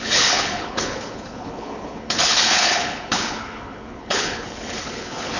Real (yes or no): no